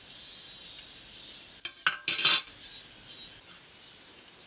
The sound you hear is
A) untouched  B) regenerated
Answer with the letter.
A